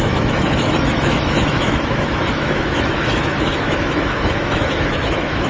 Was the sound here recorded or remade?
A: remade